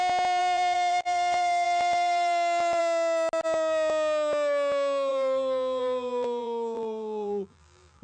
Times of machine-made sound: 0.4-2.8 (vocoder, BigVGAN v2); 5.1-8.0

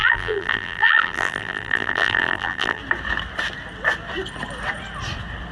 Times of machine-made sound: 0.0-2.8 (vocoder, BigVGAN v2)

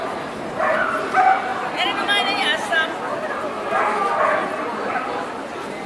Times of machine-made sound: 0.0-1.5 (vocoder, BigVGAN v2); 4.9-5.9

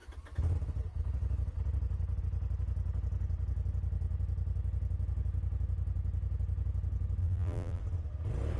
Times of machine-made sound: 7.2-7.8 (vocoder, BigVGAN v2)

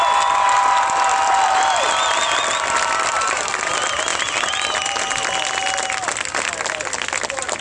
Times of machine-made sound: 1.1-3.4 (vocoder, BigVGAN v2)

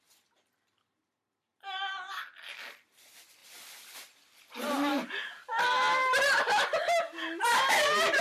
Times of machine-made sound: 1.5-2.1 (vocoder, BigVGAN v2)

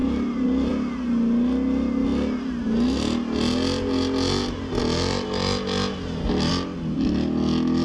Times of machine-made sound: 0.0-0.7 (vocoder, BigVGAN v2)